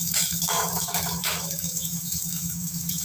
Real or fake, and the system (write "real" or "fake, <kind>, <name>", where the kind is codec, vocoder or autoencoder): fake, autoencoder, DAC-VAE